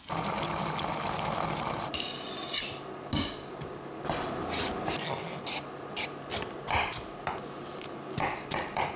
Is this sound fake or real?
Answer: real